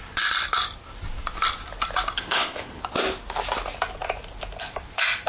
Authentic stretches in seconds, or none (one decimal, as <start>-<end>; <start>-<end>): 0.0-2.2; 2.8-5.3